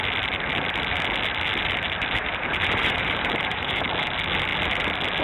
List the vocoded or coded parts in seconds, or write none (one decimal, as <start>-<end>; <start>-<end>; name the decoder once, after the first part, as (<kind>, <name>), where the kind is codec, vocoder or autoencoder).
2.8-3.8 (vocoder, BigVGAN v2)